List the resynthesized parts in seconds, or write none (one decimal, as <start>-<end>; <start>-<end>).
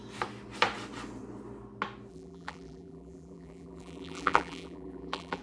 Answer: 2.1-5.4